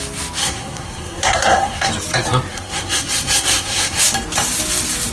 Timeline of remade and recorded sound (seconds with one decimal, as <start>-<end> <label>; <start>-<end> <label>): 0.0-0.4 recorded; 0.4-1.9 remade; 1.9-2.5 recorded; 2.5-4.0 remade; 4.0-5.1 recorded